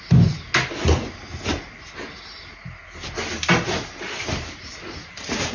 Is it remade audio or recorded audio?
recorded